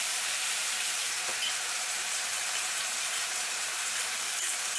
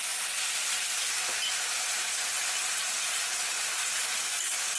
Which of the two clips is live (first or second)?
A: second